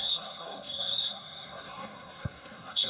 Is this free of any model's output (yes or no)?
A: no